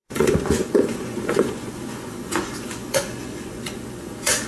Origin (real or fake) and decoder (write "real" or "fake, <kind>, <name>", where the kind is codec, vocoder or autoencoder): fake, vocoder, Vocos